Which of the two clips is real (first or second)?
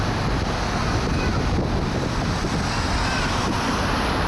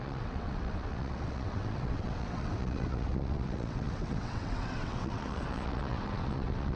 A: first